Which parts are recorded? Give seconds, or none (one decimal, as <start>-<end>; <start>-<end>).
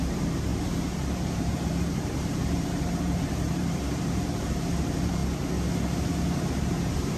5.2-6.6